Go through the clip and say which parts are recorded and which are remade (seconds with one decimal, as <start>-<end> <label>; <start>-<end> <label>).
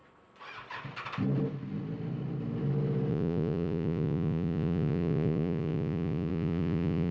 0.0-3.1 recorded; 3.1-7.1 remade